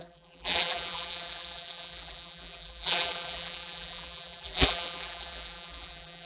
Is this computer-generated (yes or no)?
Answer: yes